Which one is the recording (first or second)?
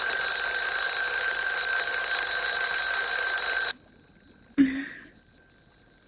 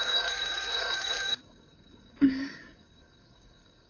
first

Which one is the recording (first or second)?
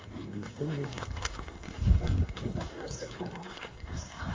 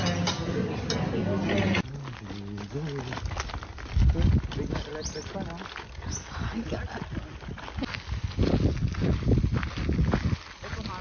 second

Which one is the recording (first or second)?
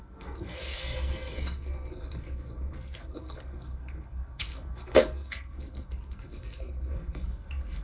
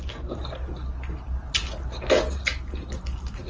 second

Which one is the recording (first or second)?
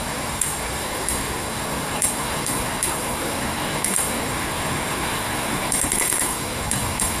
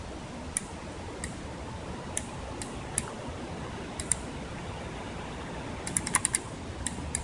second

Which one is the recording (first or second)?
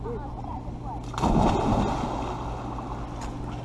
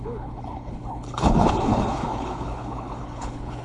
first